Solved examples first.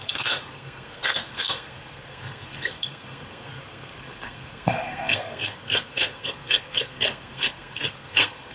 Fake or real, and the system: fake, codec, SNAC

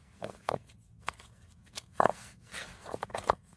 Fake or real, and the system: fake, codec, SNAC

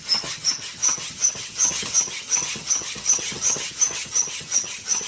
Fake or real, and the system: fake, vocoder, HiFi-GAN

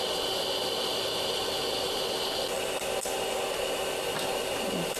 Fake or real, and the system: real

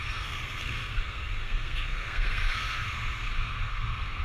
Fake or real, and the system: fake, codec, SNAC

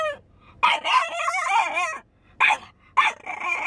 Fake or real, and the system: real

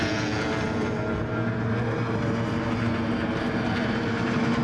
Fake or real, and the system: real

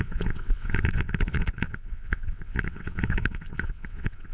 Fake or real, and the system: fake, vocoder, WaveNeXt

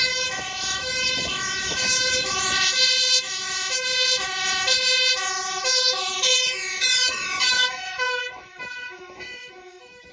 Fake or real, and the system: fake, autoencoder, DAC-VAE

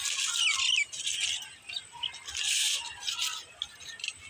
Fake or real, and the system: real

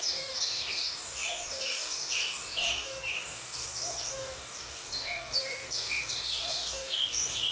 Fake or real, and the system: fake, codec, DAC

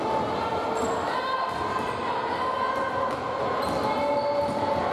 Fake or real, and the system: real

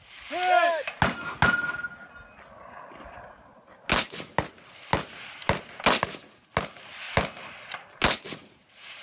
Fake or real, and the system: real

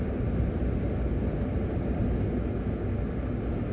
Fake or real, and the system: real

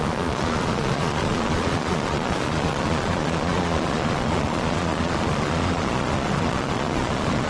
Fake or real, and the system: fake, vocoder, Vocos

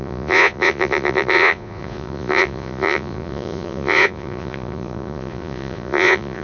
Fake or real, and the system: fake, vocoder, Vocos